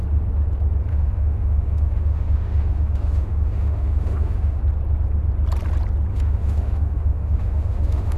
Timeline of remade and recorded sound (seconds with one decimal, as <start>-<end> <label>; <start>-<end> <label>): 0.0-0.9 recorded; 0.9-4.6 remade; 4.6-6.1 recorded; 6.1-8.2 remade

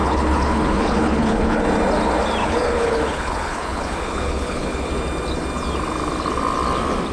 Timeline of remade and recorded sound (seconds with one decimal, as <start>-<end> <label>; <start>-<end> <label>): 0.0-1.6 remade; 1.6-2.4 recorded; 2.4-4.9 remade; 4.9-7.1 recorded

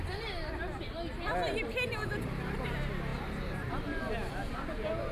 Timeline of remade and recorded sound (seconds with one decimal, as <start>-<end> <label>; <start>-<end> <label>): 0.0-3.1 recorded; 3.1-4.0 remade; 4.0-5.1 recorded